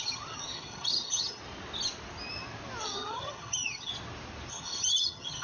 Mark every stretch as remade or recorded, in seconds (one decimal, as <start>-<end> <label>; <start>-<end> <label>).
0.0-1.4 remade; 1.4-2.8 recorded; 2.8-3.9 remade; 3.9-4.5 recorded; 4.5-5.4 remade